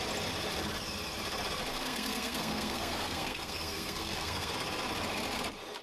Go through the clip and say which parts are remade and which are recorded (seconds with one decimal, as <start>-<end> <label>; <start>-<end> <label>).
0.0-1.7 recorded; 1.7-4.5 remade; 4.5-5.8 recorded